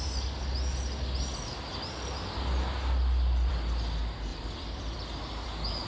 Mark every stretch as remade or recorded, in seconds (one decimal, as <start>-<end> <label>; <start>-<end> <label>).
0.0-4.3 recorded; 4.3-5.9 remade